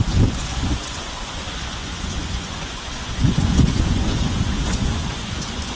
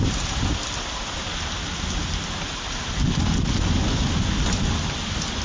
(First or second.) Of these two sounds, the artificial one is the first